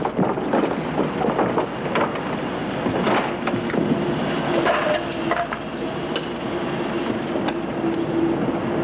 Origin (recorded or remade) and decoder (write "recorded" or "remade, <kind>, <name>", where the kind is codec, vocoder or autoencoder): recorded